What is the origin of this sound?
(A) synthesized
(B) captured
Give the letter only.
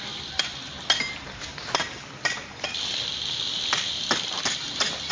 B